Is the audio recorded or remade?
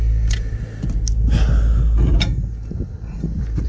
recorded